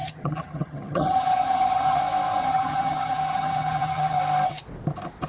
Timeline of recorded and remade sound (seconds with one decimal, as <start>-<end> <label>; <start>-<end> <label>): 0.0-2.0 remade; 2.0-2.4 recorded; 2.4-4.2 remade; 4.2-5.3 recorded